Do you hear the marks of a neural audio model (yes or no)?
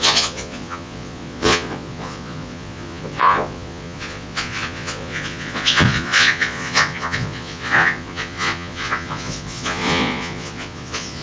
yes